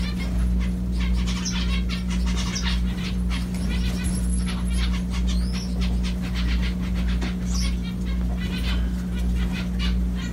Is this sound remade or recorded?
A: recorded